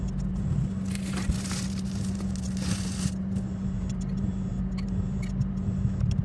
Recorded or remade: recorded